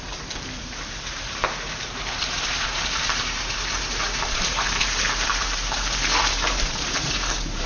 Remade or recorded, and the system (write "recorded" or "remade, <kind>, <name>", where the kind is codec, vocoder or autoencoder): remade, vocoder, BigVGAN v2